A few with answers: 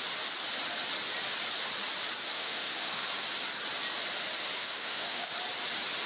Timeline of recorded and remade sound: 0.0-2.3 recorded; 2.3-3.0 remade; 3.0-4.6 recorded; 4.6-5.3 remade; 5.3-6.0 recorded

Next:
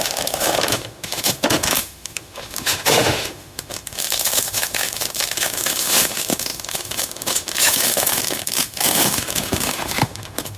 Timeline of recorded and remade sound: 0.0-10.6 remade